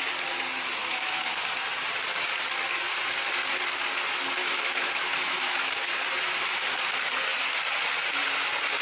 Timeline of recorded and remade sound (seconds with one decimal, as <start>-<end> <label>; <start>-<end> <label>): 0.0-0.8 recorded; 0.8-1.4 remade; 1.4-4.4 recorded; 4.4-5.9 remade; 5.9-8.8 recorded